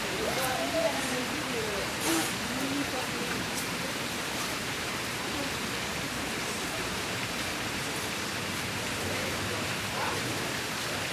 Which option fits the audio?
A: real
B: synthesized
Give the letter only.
B